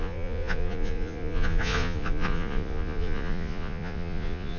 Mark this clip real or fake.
fake